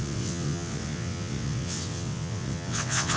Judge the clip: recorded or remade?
remade